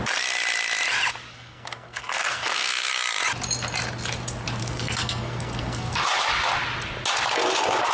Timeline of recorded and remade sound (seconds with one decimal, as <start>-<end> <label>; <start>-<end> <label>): 0.0-1.3 recorded; 1.3-2.9 remade; 2.9-4.6 recorded; 4.6-6.0 remade; 6.0-7.9 recorded